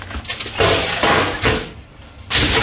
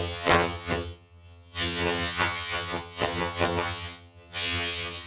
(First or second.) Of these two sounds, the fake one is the second